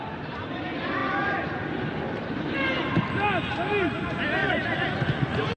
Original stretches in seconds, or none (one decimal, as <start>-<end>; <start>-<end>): 0.0-4.4